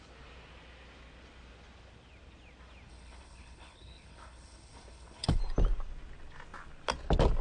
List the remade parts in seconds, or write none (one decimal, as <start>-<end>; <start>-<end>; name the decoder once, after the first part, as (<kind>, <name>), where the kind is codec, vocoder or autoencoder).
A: 2.9-5.4 (codec, HILCodec)